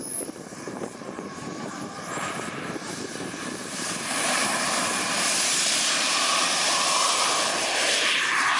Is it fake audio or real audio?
fake